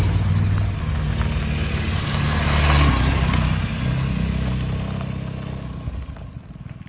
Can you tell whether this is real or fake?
real